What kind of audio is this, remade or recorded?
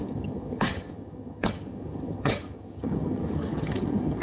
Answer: remade